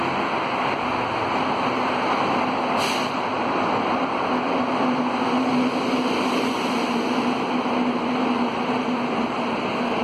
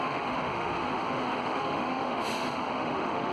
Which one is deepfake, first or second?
second